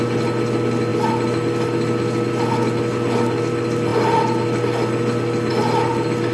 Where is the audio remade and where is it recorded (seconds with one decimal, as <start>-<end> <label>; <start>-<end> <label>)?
0.0-6.3 recorded